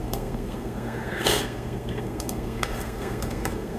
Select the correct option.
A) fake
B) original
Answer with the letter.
A